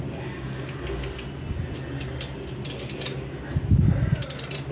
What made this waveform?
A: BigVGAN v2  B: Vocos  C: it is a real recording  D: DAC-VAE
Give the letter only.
C